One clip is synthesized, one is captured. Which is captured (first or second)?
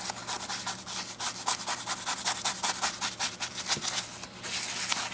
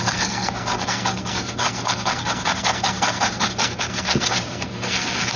first